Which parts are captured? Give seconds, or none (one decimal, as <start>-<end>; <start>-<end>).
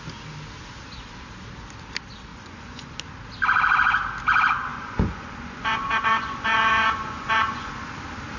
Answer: 0.0-2.3; 2.9-4.7; 7.7-8.4